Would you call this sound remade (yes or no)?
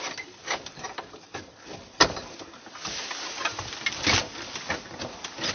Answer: no